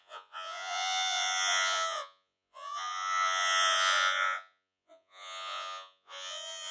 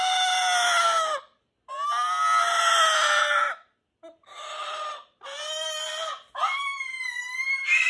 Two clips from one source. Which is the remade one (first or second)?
first